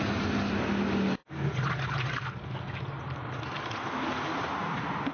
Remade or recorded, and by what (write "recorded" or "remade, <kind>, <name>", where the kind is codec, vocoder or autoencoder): recorded